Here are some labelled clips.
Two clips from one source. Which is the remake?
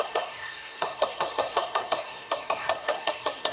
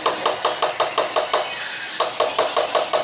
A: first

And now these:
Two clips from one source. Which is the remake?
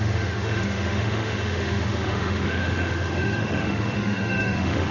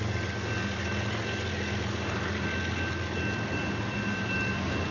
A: first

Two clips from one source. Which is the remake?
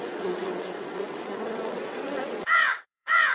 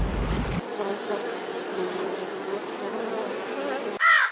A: first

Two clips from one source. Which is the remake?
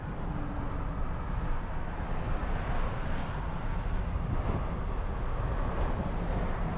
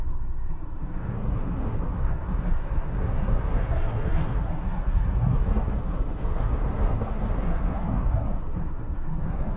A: second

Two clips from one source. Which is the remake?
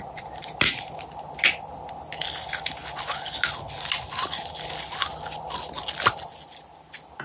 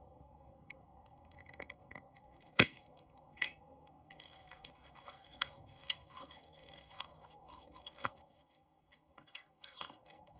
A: second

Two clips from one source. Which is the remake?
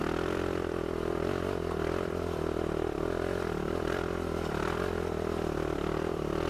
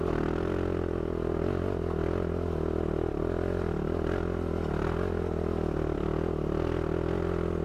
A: first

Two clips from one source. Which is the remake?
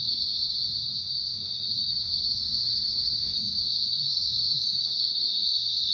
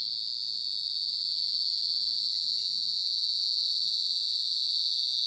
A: first